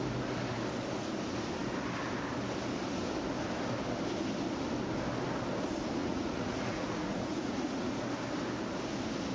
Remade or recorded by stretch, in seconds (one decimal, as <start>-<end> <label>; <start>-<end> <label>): 0.0-6.0 recorded; 6.0-8.0 remade; 8.0-9.3 recorded